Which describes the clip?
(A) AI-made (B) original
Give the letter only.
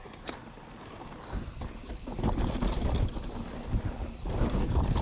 A